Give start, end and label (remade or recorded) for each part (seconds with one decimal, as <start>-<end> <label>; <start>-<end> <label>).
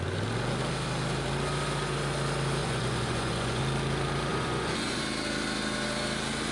0.0-2.6 recorded; 2.6-3.6 remade; 3.6-4.3 recorded; 4.3-5.0 remade; 5.0-6.5 recorded